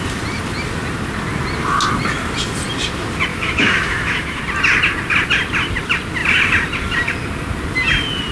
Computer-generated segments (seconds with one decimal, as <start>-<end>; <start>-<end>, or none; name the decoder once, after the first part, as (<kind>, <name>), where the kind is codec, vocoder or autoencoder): 3.3-4.4 (autoencoder, DAC-VAE)